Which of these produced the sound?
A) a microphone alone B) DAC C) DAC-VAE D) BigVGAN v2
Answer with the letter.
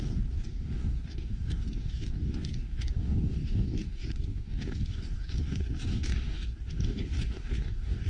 B